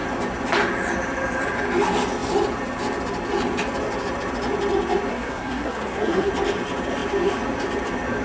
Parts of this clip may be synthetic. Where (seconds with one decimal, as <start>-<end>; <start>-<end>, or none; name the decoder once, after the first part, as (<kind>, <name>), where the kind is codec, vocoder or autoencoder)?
5.1-6.3 (codec, SNAC)